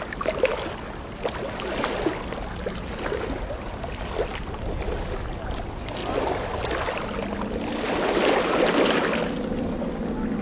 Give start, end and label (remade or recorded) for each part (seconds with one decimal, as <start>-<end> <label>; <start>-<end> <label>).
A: 0.0-10.4 recorded